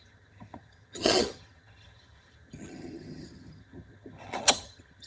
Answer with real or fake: fake